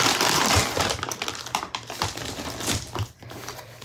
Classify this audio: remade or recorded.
remade